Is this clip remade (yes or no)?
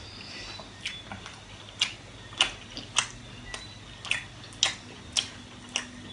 no